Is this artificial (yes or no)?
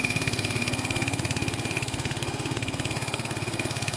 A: yes